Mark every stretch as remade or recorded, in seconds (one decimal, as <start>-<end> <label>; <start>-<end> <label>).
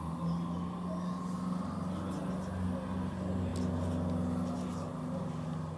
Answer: 0.0-5.8 recorded